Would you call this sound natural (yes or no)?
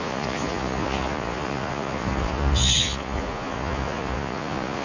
no